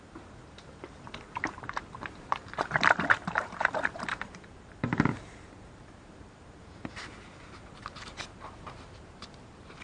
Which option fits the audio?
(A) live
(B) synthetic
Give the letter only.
B